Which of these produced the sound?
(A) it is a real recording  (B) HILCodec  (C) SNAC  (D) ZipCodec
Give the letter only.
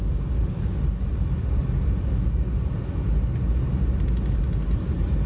A